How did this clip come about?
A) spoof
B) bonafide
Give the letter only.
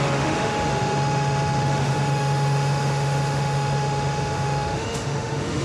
A